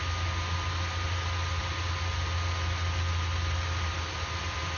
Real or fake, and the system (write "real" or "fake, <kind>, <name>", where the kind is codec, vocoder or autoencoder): real